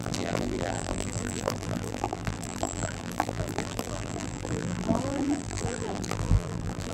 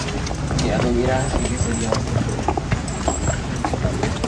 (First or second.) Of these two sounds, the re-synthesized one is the first